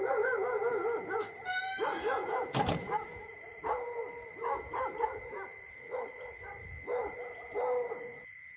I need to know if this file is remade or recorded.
recorded